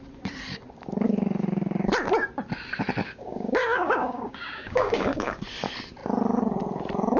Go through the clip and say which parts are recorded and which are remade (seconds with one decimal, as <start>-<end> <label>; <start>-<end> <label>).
0.0-3.0 recorded; 3.0-5.4 remade; 5.4-7.2 recorded